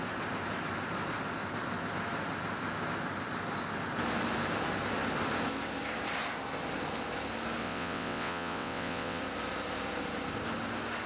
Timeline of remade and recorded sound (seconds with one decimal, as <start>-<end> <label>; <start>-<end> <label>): 0.0-7.6 recorded; 7.6-9.2 remade; 9.2-11.1 recorded

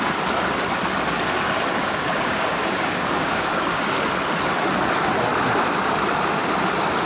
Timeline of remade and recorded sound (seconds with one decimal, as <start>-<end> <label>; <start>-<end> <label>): 0.0-1.8 recorded; 1.8-3.8 remade; 3.8-7.1 recorded

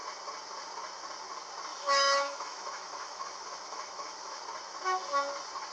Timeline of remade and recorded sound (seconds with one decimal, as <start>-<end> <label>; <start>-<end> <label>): 0.0-1.7 recorded; 1.7-4.4 remade; 4.4-5.7 recorded

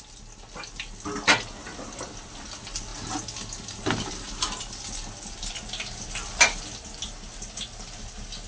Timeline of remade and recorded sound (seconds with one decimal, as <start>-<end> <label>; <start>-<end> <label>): 0.0-8.5 recorded

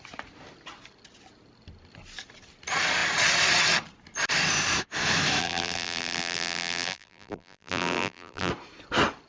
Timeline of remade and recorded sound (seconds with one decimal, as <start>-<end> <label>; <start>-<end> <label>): 0.0-5.4 recorded; 5.4-8.5 remade; 8.5-9.3 recorded

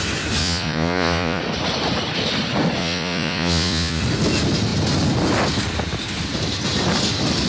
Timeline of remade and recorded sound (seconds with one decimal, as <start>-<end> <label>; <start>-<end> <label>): 0.0-0.4 recorded; 0.4-1.4 remade; 1.4-2.8 recorded; 2.8-4.0 remade; 4.0-7.5 recorded